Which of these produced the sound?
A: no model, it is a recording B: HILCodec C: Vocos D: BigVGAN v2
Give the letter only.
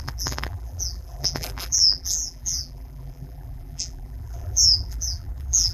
D